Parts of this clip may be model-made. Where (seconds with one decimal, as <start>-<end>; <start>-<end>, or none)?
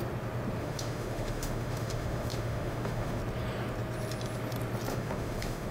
0.6-3.2; 4.9-5.7